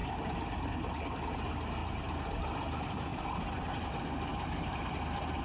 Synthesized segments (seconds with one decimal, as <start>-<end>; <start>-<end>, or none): 0.0-0.7; 1.8-2.5; 3.1-3.9; 4.3-4.9